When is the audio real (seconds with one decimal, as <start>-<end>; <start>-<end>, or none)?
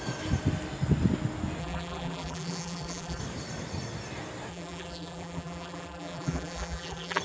0.0-1.6; 3.2-4.5